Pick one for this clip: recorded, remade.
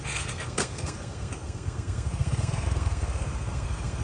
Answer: remade